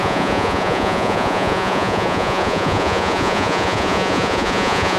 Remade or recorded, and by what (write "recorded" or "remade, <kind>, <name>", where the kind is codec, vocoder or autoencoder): remade, vocoder, Vocos